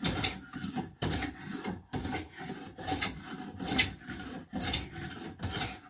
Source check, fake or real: real